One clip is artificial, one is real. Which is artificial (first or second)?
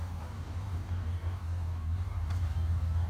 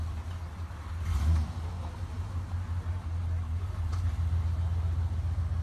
first